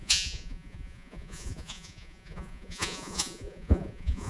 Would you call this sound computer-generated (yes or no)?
yes